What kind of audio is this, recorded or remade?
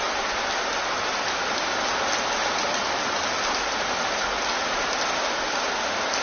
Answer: recorded